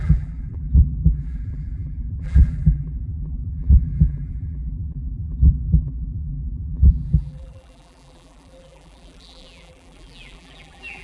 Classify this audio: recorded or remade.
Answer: remade